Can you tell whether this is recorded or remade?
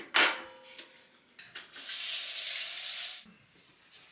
recorded